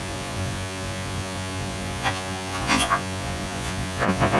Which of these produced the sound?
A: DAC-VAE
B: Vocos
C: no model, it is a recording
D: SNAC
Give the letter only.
B